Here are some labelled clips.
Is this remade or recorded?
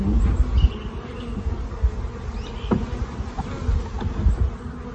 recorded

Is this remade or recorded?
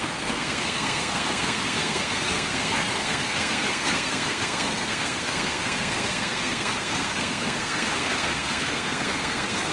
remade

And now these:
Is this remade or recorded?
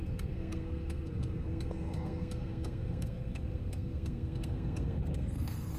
remade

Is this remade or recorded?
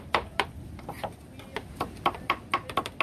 recorded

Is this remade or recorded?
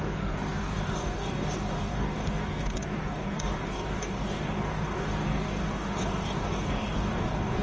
remade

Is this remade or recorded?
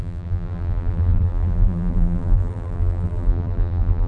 remade